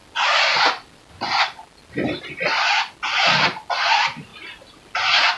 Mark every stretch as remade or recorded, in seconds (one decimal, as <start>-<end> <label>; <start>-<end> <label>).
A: 0.0-5.4 recorded